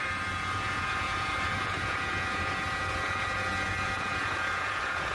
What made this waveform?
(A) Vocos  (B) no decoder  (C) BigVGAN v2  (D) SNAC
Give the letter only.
A